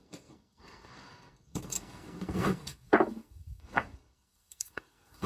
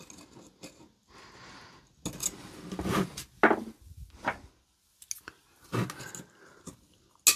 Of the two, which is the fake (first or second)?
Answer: first